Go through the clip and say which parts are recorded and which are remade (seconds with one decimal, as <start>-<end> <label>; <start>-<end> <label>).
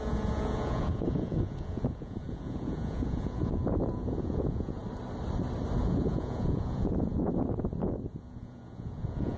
0.0-4.8 remade; 4.8-5.8 recorded; 5.8-9.4 remade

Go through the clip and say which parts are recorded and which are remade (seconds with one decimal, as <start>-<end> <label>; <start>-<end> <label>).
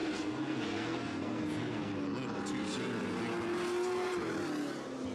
0.0-1.9 remade; 1.9-5.1 recorded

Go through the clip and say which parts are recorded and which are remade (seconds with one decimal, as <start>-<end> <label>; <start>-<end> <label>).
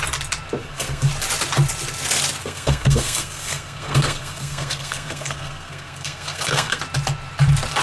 0.0-0.6 recorded; 0.6-1.1 remade; 1.1-2.4 recorded; 2.4-6.8 remade; 6.8-7.8 recorded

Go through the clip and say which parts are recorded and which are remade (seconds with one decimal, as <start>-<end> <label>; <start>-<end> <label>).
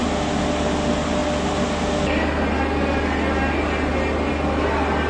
0.0-5.1 recorded